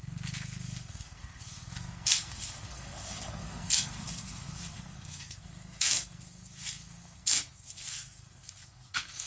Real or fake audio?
fake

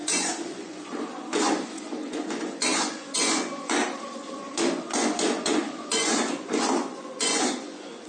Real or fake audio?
fake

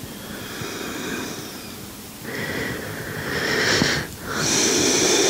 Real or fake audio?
fake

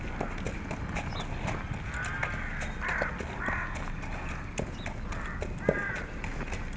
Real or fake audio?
real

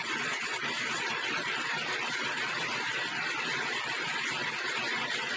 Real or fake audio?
real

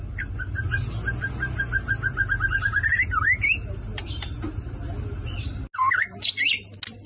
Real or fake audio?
real